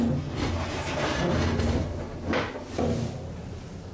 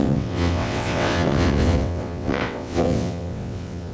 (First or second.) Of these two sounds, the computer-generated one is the second